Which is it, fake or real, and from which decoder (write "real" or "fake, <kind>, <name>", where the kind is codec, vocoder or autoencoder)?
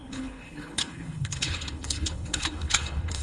fake, codec, HILCodec